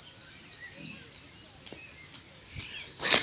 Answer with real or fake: real